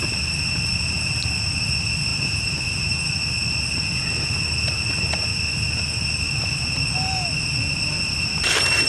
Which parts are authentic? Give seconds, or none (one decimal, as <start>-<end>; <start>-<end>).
0.0-2.1; 3.0-8.9